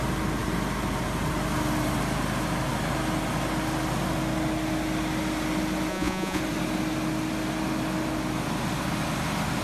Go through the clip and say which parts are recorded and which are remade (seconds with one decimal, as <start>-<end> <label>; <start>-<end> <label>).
0.0-5.9 recorded; 5.9-6.4 remade; 6.4-9.6 recorded